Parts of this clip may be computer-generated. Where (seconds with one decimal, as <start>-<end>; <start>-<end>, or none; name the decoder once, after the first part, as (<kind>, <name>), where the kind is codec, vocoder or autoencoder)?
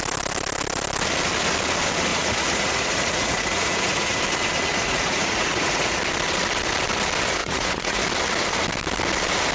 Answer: 2.1-4.2 (vocoder, Vocos); 4.7-6.0; 7.4-8.0